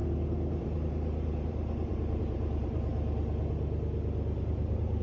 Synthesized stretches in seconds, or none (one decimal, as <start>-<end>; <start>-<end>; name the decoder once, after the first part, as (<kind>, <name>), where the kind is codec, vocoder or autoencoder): 0.0-2.9 (vocoder, BigVGAN v2); 4.4-5.0